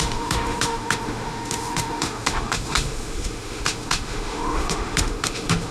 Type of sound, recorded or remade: remade